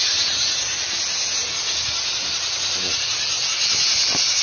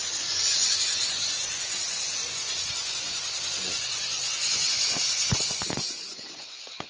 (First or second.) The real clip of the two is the first